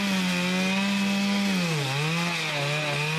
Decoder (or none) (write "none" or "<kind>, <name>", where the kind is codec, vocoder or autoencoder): none